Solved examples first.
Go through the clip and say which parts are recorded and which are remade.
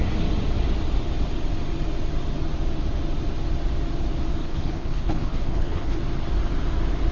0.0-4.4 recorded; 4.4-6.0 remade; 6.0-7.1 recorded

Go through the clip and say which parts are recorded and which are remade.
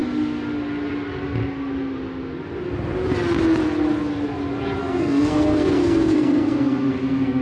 0.0-4.8 recorded; 4.8-7.4 remade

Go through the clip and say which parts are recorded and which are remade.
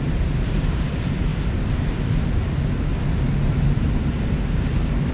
0.0-1.3 remade; 1.3-1.8 recorded; 1.8-2.9 remade; 2.9-5.1 recorded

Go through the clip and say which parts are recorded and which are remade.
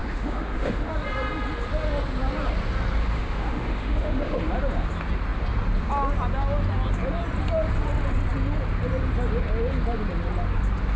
0.0-0.9 remade; 0.9-3.0 recorded; 3.0-4.4 remade; 4.4-11.0 recorded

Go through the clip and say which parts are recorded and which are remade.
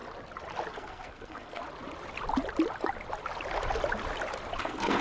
0.0-0.7 recorded; 0.7-1.6 remade; 1.6-4.6 recorded; 4.6-5.0 remade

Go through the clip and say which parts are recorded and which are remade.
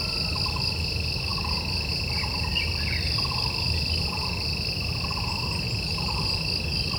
0.0-2.5 recorded; 2.5-6.4 remade; 6.4-7.0 recorded